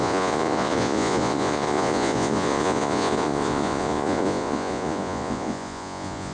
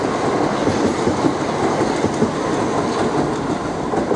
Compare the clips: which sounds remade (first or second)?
first